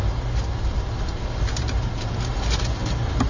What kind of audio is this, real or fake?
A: real